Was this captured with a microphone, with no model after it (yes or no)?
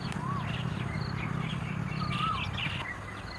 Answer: yes